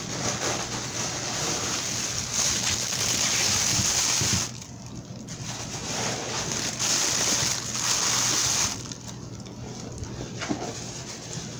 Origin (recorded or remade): recorded